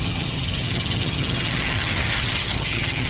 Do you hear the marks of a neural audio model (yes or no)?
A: yes